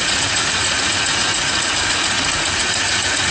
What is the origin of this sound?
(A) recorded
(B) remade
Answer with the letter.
B